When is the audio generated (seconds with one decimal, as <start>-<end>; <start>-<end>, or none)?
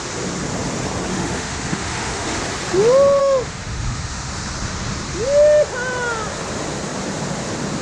1.1-2.4; 3.2-4.3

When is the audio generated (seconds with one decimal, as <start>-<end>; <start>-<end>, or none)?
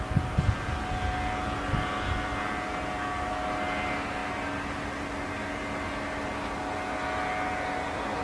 none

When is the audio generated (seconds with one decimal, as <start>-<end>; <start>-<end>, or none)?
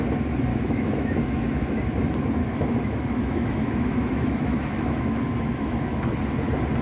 0.5-1.8; 2.4-6.1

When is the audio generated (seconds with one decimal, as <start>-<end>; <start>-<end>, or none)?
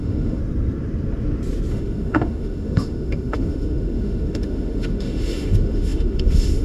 0.0-0.4; 1.7-6.6